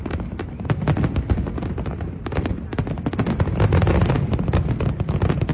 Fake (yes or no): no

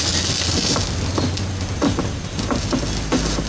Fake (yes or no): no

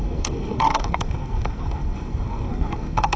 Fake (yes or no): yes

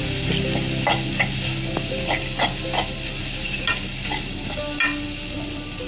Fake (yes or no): no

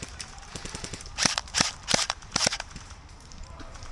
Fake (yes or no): yes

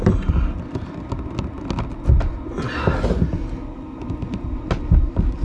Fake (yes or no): no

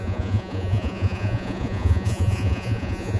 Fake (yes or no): yes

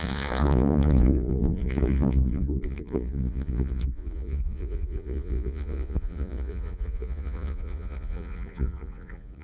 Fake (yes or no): yes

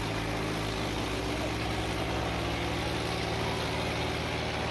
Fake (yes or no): no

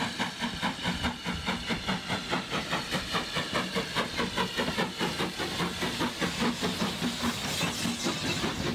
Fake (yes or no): no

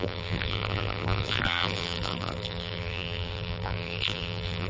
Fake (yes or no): yes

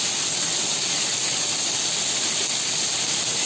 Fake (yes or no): no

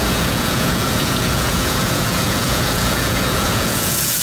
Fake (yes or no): yes